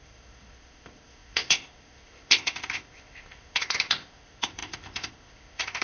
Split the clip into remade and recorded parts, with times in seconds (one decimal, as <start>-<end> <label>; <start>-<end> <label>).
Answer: 0.0-5.8 remade